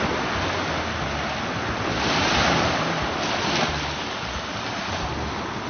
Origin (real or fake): real